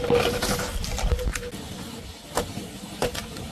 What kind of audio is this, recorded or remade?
recorded